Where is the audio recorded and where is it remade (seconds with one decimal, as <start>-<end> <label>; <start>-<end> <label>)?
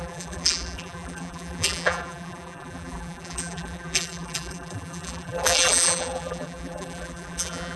0.0-7.8 remade